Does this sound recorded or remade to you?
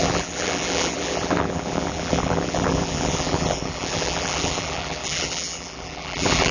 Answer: remade